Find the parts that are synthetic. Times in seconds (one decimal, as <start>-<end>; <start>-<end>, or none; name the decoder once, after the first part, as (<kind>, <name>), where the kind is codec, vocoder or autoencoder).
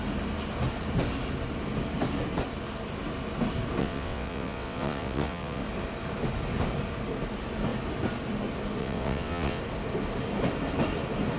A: 3.8-5.6 (vocoder, WaveNeXt); 8.8-9.6